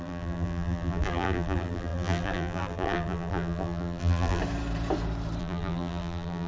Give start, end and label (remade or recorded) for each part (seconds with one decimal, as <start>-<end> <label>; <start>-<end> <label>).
0.0-4.4 remade; 4.4-5.4 recorded; 5.4-6.5 remade